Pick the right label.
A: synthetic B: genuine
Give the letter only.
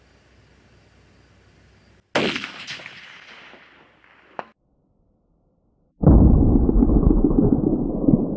B